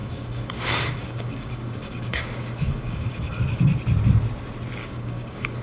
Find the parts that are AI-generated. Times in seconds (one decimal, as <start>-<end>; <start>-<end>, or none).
0.0-3.4; 4.8-5.6